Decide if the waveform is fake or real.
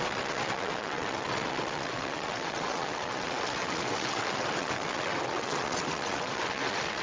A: fake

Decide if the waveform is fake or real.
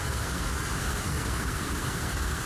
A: fake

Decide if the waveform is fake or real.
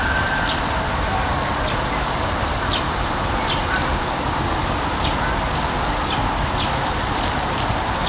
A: real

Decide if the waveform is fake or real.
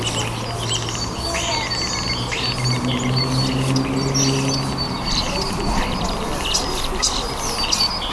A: real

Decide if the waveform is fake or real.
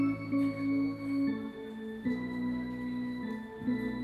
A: real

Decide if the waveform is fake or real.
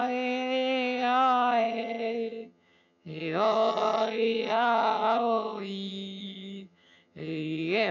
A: fake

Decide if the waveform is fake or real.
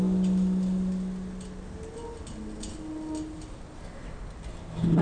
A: real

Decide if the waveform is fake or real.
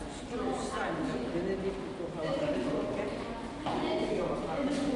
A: real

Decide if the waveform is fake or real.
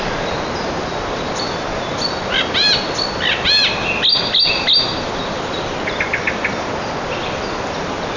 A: real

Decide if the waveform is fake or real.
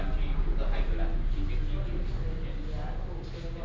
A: real